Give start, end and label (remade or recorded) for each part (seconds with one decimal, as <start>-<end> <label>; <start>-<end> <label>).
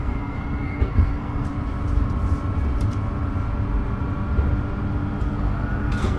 0.0-1.5 remade; 1.5-5.2 recorded; 5.2-6.2 remade